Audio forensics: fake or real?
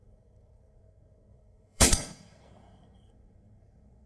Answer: fake